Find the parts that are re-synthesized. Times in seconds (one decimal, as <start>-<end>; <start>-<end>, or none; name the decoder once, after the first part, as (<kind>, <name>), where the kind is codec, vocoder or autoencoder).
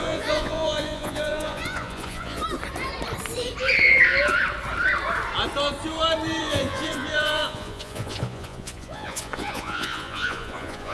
0.0-2.4 (vocoder, Vocos); 6.4-10.9